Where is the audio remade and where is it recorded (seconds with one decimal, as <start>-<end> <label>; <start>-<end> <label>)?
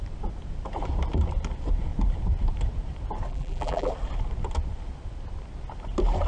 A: 0.0-3.3 recorded; 3.3-3.9 remade; 3.9-6.3 recorded